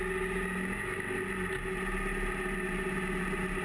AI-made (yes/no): no